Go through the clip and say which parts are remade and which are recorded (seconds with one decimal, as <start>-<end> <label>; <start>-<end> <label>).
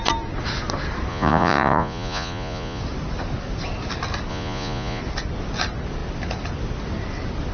0.0-1.1 recorded; 1.1-2.8 remade; 2.8-4.3 recorded; 4.3-5.0 remade; 5.0-7.5 recorded